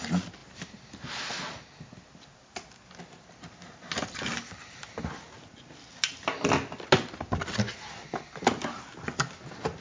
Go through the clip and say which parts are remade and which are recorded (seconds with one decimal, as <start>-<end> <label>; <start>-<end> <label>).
0.0-0.4 recorded; 0.4-1.1 remade; 1.1-9.8 recorded